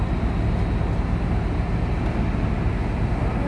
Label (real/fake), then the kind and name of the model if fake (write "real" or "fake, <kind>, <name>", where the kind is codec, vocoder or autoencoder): real